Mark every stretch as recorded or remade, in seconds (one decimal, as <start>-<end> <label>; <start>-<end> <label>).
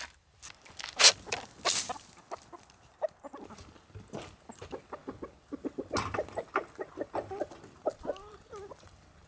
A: 0.0-9.3 recorded